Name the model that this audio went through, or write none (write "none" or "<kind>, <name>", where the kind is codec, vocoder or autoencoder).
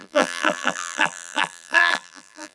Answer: vocoder, BigVGAN v2